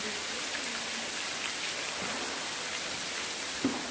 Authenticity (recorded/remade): recorded